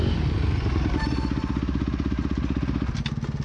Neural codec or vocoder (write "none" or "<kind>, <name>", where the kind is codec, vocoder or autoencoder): none